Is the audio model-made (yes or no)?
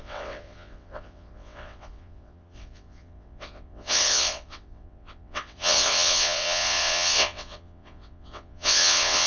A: yes